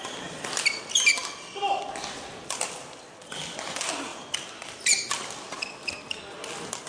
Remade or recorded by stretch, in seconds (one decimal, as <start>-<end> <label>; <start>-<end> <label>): 0.0-6.9 recorded